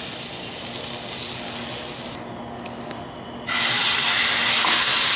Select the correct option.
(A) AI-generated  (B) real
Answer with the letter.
B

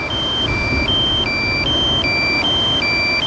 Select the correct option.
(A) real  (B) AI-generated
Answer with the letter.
A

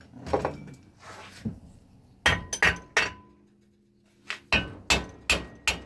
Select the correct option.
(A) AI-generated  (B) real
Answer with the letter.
B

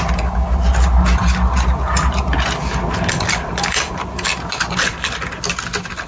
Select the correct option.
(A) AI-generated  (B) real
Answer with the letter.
B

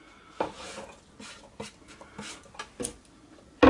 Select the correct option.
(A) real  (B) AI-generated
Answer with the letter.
A